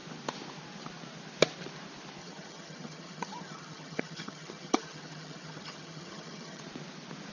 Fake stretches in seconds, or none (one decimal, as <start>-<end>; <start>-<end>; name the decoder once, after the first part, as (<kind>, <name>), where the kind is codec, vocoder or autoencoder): 2.2-6.6 (vocoder, HiFi-GAN)